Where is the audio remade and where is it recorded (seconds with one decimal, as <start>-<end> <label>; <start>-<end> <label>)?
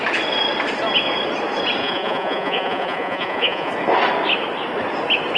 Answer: 0.0-1.8 recorded; 1.8-3.7 remade; 3.7-5.4 recorded